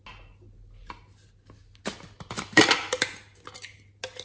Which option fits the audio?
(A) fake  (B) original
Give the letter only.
B